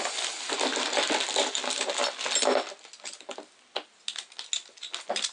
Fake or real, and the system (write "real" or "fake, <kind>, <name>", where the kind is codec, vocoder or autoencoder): real